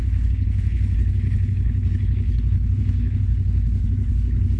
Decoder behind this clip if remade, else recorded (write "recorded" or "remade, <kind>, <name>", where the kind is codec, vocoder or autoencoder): remade, codec, HILCodec